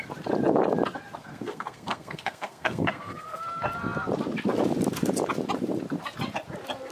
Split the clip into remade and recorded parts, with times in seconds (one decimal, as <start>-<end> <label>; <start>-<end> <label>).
0.0-1.2 recorded; 1.2-3.4 remade; 3.4-6.9 recorded